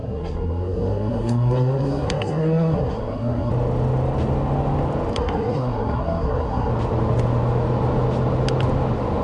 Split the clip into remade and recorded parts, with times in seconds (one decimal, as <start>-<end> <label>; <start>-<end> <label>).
0.0-3.5 remade; 3.5-5.1 recorded; 5.1-6.7 remade; 6.7-9.2 recorded